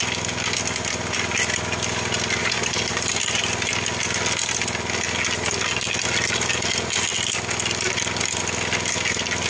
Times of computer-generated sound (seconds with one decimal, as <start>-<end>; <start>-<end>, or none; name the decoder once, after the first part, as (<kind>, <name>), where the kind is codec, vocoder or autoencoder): 2.4-3.7 (vocoder, BigVGAN v2)